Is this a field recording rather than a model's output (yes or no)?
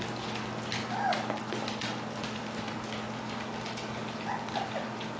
yes